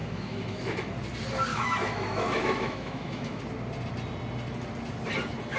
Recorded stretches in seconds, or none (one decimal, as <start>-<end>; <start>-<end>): 0.9-1.5; 3.4-5.6